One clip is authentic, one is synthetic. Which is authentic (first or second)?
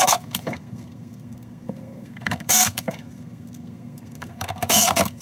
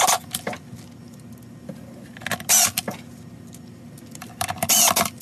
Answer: second